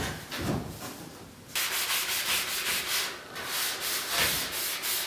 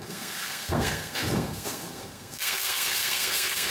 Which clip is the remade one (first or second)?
second